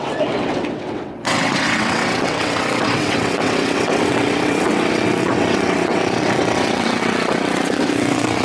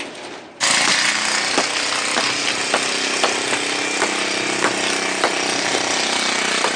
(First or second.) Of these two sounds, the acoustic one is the second